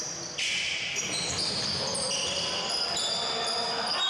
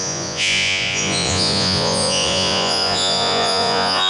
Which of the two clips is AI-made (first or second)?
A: second